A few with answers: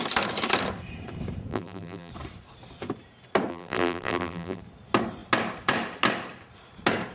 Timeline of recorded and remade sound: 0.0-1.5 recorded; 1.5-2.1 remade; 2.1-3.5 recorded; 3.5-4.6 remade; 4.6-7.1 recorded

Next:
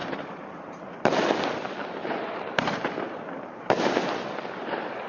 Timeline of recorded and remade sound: 0.0-1.1 remade; 1.1-2.0 recorded; 2.0-4.0 remade; 4.0-5.1 recorded